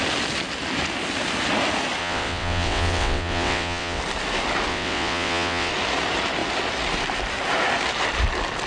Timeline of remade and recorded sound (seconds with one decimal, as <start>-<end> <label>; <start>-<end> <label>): 0.0-2.0 recorded; 2.0-4.0 remade; 4.0-4.7 recorded; 4.7-5.7 remade; 5.7-8.7 recorded